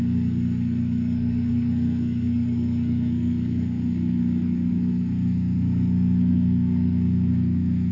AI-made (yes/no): yes